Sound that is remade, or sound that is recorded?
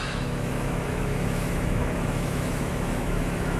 remade